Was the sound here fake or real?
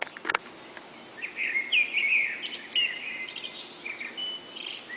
real